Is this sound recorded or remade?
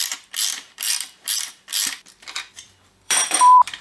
remade